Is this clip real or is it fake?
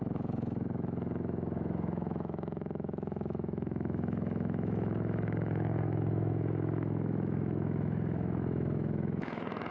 fake